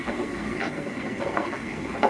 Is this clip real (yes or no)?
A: no